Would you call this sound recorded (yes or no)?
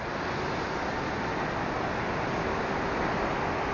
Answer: yes